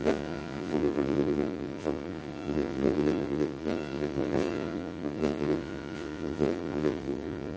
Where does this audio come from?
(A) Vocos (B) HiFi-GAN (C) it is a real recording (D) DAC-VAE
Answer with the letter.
A